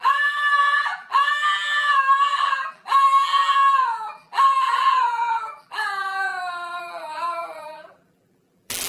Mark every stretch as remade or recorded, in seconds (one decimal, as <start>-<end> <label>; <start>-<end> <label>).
0.0-6.3 remade; 6.3-6.8 recorded; 6.8-8.9 remade